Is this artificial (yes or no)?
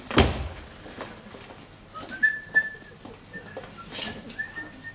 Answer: no